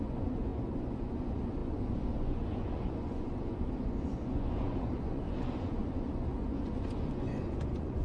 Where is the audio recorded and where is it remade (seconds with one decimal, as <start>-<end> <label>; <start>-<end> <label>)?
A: 0.0-8.0 remade